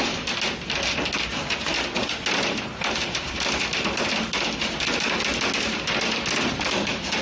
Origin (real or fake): real